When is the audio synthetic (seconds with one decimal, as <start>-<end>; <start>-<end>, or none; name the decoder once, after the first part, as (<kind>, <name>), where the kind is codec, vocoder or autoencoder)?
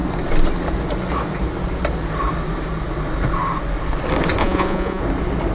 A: 4.4-5.0 (vocoder, Vocos)